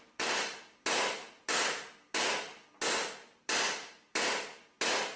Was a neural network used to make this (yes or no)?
no